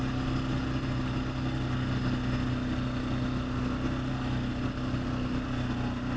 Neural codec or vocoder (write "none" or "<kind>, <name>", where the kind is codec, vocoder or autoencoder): none